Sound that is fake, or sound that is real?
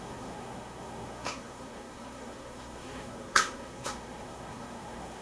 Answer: fake